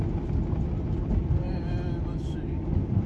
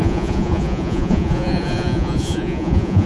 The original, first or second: first